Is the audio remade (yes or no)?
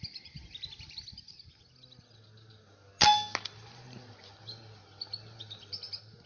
no